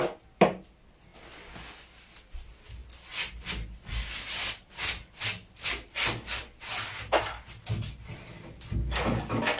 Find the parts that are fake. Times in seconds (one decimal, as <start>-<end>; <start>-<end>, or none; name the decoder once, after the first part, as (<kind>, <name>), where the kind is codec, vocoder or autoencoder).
none